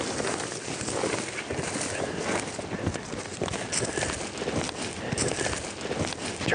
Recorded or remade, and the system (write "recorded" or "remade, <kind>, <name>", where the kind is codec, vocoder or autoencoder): recorded